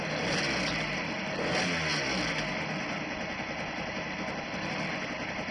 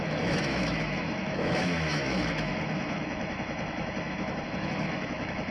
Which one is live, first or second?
first